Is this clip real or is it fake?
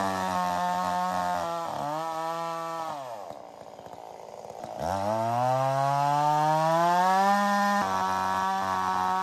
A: real